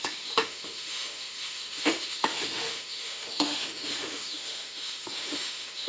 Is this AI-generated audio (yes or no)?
yes